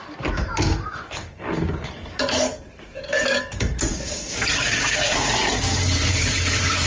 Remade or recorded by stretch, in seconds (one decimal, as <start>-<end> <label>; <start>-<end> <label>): 0.0-6.9 remade